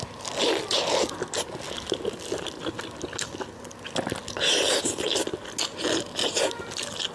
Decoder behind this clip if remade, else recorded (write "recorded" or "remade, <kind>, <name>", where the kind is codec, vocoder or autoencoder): recorded